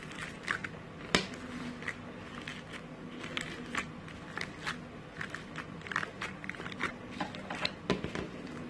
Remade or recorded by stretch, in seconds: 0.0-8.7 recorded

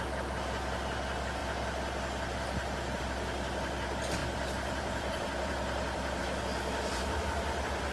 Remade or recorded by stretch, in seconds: 0.0-4.2 recorded; 4.2-6.2 remade; 6.2-7.9 recorded

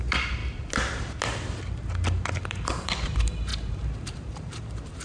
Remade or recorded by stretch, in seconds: 0.0-0.4 remade; 0.4-2.4 recorded; 2.4-5.0 remade

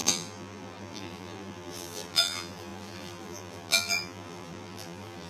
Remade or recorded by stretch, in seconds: 0.0-5.3 remade

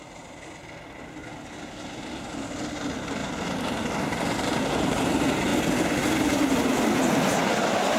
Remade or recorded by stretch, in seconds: 0.0-3.2 recorded; 3.2-5.1 remade; 5.1-8.0 recorded

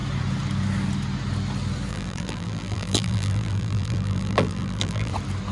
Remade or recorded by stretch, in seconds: 0.0-1.9 recorded; 1.9-5.1 remade; 5.1-5.5 recorded